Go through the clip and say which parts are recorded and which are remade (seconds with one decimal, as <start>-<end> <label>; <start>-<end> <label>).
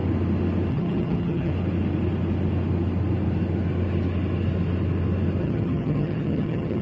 0.0-0.7 recorded; 0.7-1.5 remade; 1.5-5.4 recorded; 5.4-6.8 remade